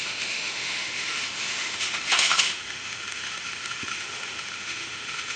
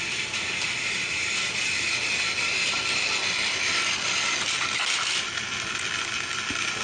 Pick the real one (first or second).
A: second